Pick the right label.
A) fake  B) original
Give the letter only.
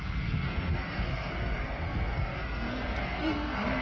A